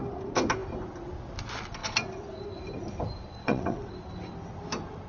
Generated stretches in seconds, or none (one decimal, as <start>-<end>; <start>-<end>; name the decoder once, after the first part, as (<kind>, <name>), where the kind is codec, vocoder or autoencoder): 3.4-3.9 (vocoder, WaveNeXt)